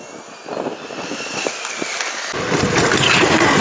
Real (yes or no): yes